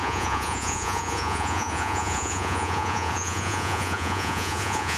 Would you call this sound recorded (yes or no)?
no